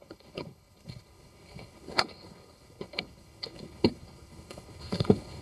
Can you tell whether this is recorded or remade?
remade